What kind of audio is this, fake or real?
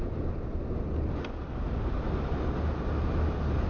real